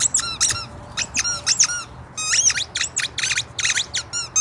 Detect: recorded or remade recorded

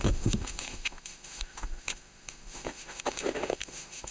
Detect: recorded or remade remade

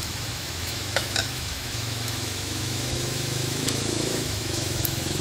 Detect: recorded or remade remade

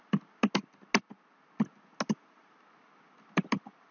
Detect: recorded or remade recorded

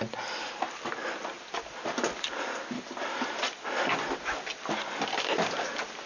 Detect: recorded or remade recorded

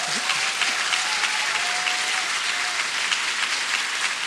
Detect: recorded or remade recorded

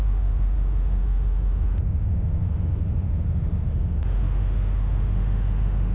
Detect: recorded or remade remade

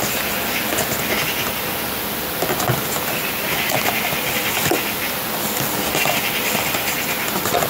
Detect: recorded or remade recorded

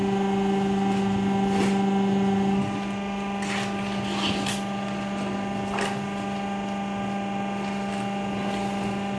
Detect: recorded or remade recorded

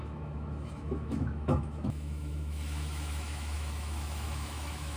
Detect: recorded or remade remade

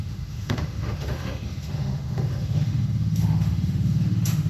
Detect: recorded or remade remade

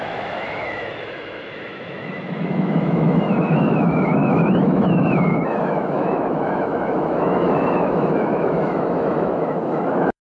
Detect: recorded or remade remade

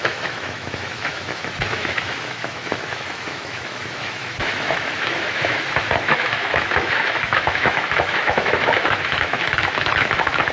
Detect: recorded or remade remade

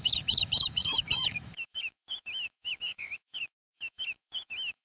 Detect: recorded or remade remade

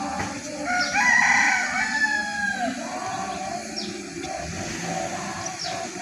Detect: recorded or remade recorded